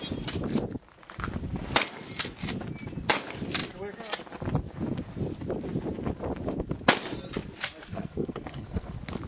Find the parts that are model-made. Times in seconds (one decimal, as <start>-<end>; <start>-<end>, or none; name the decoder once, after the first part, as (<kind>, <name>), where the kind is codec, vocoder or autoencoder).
7.9-8.9 (codec, SNAC)